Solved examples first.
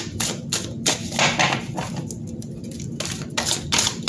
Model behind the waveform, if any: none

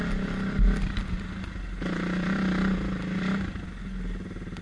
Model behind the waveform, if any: none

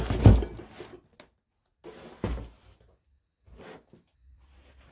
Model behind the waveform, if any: none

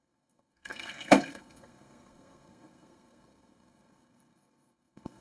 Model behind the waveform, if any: codec, SNAC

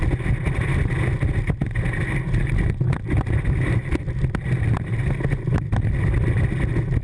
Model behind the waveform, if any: none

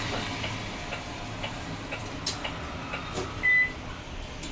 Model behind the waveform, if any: none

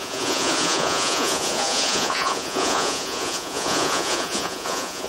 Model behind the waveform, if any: vocoder, Vocos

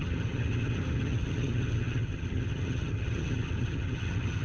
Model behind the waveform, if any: vocoder, HiFi-GAN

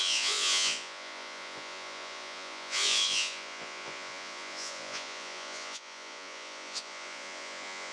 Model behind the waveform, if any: vocoder, Vocos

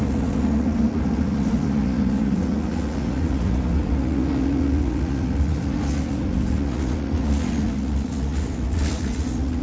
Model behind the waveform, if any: vocoder, Vocos